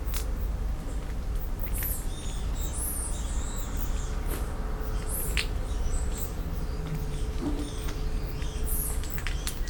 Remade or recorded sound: recorded